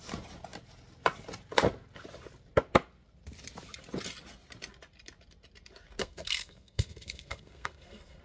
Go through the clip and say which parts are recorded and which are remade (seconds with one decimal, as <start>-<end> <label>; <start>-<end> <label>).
0.0-6.0 recorded; 6.0-8.2 remade